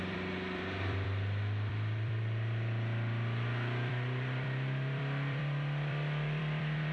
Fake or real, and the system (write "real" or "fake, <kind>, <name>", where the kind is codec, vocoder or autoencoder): fake, vocoder, BigVGAN v2